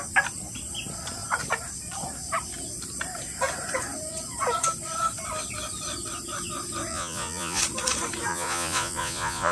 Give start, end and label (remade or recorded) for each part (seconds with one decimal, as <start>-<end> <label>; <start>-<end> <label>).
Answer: 0.0-6.9 recorded; 6.9-7.6 remade; 7.6-8.3 recorded; 8.3-9.5 remade